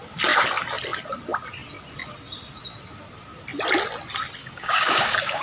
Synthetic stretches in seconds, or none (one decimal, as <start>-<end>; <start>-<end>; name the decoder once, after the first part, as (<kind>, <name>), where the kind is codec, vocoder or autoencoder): 4.4-5.4 (codec, DAC)